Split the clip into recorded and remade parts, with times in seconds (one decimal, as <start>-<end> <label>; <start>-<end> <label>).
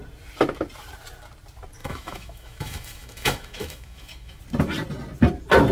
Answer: 0.0-1.8 recorded; 1.8-4.4 remade; 4.4-5.7 recorded